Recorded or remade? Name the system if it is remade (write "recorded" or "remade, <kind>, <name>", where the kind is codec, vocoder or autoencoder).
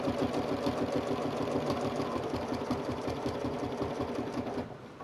recorded